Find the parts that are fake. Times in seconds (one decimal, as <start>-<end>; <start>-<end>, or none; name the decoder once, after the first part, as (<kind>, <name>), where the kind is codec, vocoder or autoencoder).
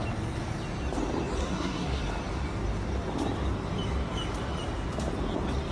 1.4-2.0 (codec, SNAC)